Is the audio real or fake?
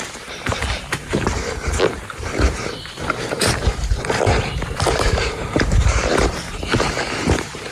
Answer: fake